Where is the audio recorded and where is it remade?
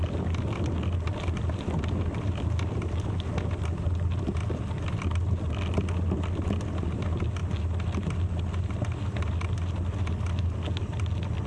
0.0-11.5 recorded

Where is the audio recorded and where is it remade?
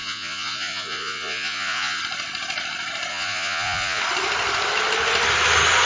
0.0-2.0 remade; 2.0-3.1 recorded; 3.1-4.0 remade; 4.0-5.9 recorded